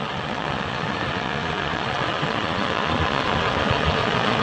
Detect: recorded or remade remade